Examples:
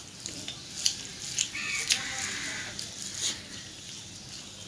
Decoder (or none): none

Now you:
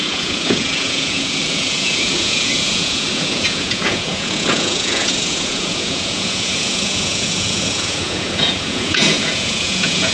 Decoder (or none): vocoder, Vocos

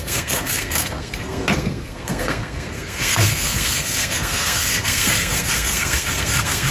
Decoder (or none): codec, SNAC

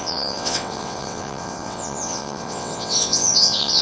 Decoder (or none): vocoder, WaveNeXt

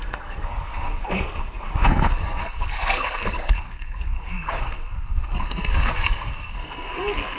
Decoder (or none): codec, SNAC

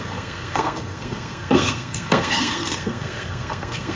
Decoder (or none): codec, SNAC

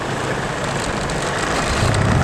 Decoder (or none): none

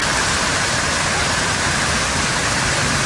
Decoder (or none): none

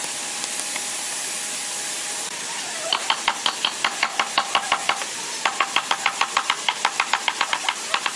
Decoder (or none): none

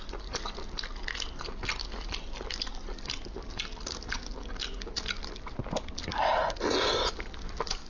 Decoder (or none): none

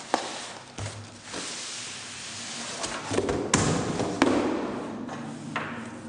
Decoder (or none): none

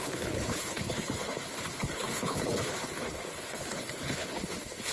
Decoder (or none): codec, HILCodec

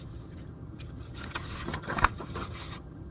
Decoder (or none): vocoder, HiFi-GAN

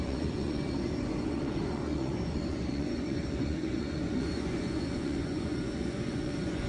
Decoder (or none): vocoder, Vocos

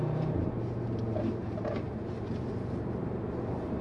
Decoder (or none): vocoder, BigVGAN v2